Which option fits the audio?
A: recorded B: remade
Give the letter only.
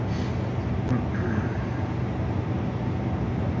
A